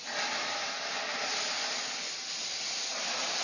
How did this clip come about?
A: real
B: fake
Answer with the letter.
A